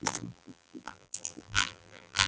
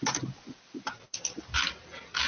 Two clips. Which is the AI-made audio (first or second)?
first